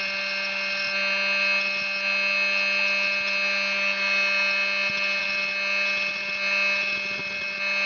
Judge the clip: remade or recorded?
recorded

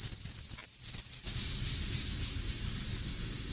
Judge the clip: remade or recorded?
recorded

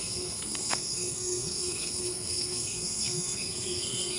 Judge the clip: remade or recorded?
remade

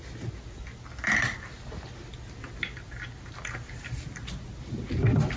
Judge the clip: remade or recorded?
recorded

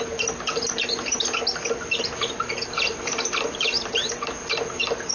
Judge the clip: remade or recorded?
recorded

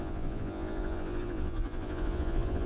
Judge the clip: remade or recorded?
remade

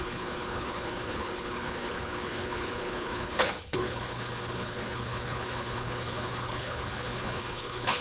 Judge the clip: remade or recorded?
remade